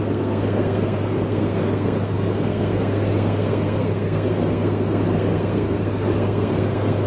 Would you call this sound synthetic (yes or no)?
yes